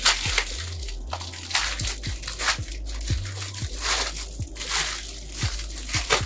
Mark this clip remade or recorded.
recorded